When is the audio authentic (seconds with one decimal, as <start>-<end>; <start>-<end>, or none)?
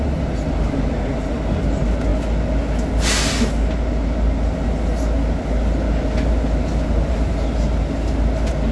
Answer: 0.0-8.7